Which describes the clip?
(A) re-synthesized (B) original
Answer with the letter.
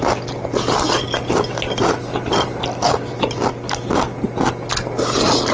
B